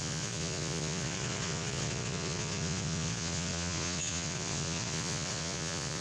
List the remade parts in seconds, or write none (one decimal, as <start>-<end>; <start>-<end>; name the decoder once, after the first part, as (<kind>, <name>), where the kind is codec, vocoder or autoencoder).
0.0-6.0 (vocoder, Vocos)